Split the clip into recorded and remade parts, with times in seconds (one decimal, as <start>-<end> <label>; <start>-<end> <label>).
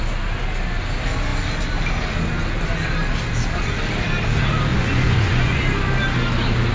0.0-4.7 recorded; 4.7-5.6 remade; 5.6-6.7 recorded